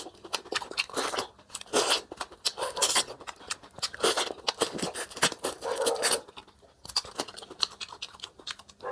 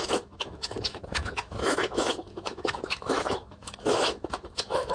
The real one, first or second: first